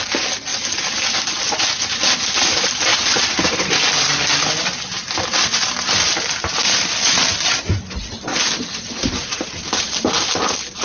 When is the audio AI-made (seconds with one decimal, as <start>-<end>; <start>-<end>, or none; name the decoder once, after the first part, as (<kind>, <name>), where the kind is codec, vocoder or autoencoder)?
none